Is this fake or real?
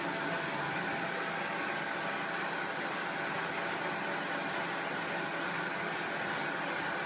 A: real